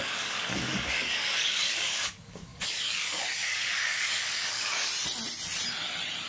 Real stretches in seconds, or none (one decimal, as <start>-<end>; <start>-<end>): 4.9-6.3